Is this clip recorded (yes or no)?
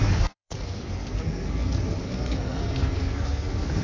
no